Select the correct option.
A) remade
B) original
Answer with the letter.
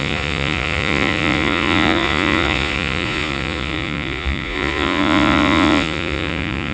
A